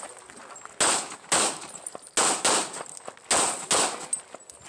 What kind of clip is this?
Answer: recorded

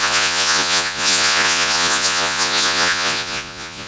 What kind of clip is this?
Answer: remade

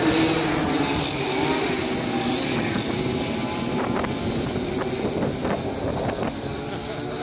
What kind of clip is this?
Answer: recorded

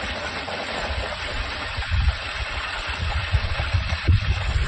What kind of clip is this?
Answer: remade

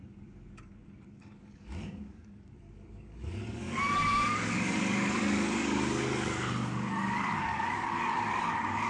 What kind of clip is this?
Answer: remade